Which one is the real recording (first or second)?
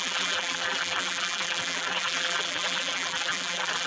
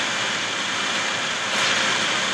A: second